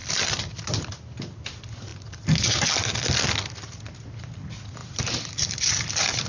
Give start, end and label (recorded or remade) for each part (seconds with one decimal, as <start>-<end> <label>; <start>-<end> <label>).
0.0-0.9 remade; 0.9-4.8 recorded; 4.8-6.3 remade